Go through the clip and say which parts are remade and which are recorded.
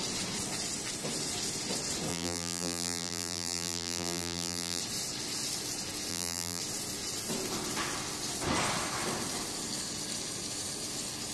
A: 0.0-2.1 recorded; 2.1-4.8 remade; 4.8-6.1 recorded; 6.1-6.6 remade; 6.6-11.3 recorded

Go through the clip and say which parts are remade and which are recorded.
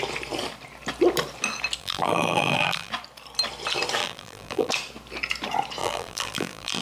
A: 0.0-1.8 recorded; 1.8-2.9 remade; 2.9-4.0 recorded; 4.0-4.7 remade; 4.7-5.8 recorded; 5.8-6.8 remade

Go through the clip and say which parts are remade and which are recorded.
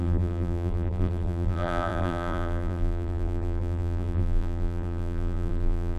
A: 0.0-6.0 remade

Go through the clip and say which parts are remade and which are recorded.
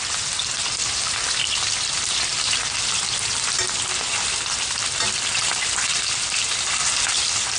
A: 0.0-2.3 remade; 2.3-5.4 recorded; 5.4-7.6 remade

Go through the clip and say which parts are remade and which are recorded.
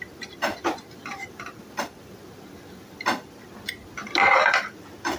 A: 0.0-5.2 recorded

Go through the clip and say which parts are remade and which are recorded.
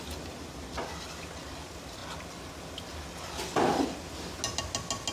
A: 0.0-5.1 recorded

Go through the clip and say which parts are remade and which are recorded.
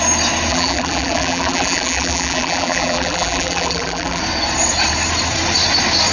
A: 0.0-0.5 recorded; 0.5-4.2 remade; 4.2-6.1 recorded